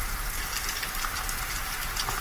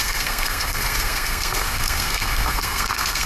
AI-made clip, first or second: second